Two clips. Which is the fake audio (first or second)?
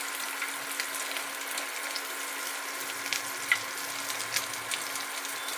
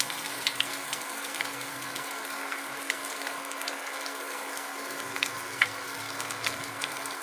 second